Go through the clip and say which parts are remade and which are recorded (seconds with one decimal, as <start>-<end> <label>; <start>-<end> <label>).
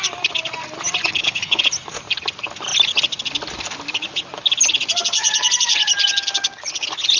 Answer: 0.0-1.1 recorded; 1.1-1.6 remade; 1.6-7.2 recorded